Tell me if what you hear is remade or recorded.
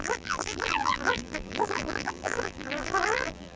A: remade